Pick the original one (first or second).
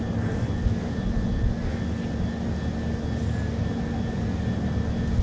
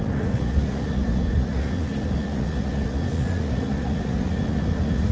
first